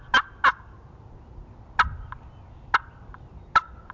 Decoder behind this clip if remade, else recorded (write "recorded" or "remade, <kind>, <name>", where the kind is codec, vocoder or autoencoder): recorded